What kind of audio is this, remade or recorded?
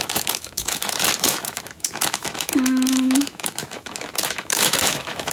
remade